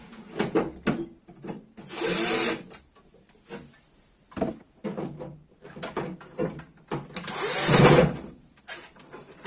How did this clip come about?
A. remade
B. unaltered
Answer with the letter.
B